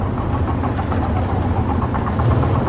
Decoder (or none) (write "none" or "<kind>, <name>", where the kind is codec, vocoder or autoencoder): none